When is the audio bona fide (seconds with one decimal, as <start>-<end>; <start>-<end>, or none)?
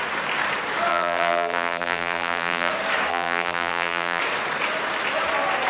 0.0-0.9; 2.7-3.1; 4.2-5.7